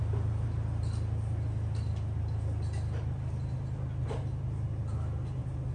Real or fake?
real